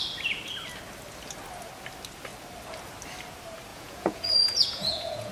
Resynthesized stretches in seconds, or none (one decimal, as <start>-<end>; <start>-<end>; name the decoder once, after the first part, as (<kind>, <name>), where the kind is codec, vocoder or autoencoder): 3.7-5.3 (vocoder, Vocos)